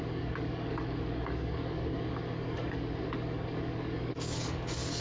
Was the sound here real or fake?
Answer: fake